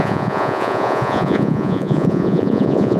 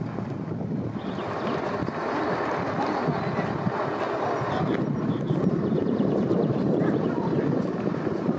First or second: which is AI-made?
first